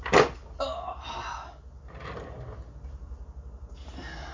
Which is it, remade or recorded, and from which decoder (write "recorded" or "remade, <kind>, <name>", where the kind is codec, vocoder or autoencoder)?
recorded